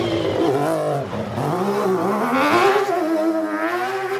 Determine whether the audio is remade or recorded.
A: recorded